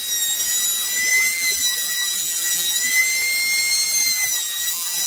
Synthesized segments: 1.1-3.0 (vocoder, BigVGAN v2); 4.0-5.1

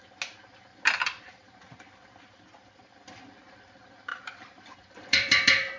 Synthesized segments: 0.7-1.7 (vocoder, BigVGAN v2); 4.1-5.8

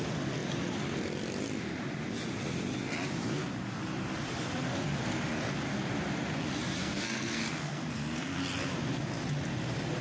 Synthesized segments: 6.8-8.4 (codec, SNAC)

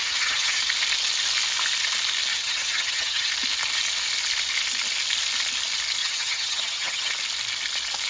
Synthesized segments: 0.0-0.6 (vocoder, HiFi-GAN); 2.3-3.3; 6.0-7.1